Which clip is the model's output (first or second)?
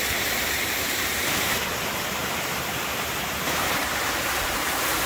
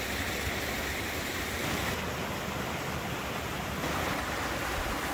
first